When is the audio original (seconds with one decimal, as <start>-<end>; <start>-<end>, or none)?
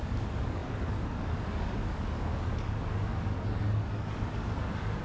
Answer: none